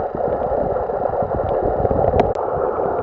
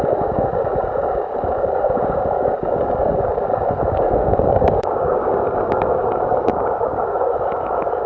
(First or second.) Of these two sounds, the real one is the first